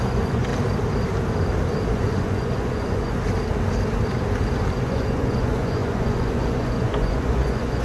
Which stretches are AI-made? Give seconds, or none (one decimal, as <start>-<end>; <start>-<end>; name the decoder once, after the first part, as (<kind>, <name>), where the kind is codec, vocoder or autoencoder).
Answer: 0.0-0.5 (vocoder, Vocos); 1.9-3.2; 4.8-7.8